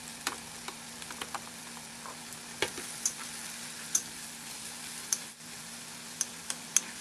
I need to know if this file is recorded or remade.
recorded